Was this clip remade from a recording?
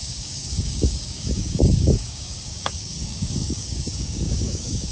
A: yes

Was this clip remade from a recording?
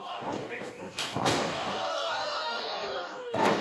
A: yes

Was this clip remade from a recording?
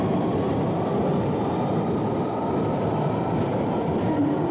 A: no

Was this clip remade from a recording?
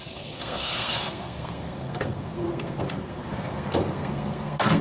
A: yes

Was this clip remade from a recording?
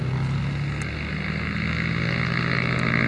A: no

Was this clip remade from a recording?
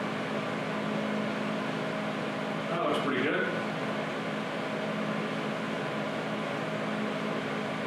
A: no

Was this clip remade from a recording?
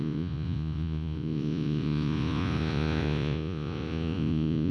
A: yes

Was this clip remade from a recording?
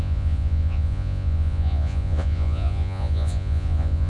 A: yes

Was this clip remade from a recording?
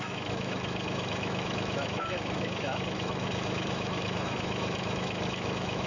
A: yes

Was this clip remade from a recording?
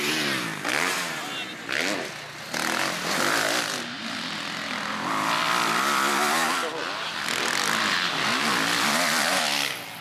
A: no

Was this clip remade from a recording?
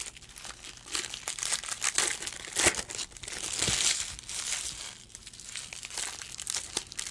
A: no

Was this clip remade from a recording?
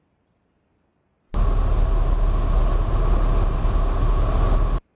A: no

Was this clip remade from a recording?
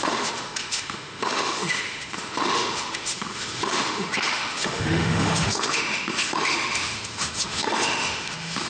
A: yes